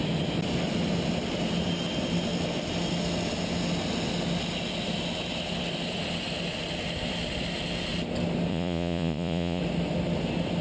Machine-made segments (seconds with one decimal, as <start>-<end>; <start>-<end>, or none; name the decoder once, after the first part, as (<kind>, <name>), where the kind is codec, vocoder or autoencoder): 8.5-9.6 (vocoder, Vocos)